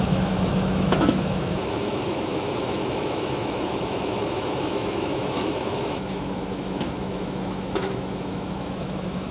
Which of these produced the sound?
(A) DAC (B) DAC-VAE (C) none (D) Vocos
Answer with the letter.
B